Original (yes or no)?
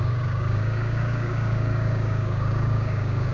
no